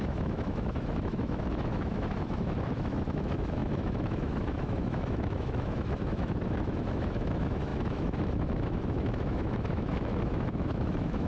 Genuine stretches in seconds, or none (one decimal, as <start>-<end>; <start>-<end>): none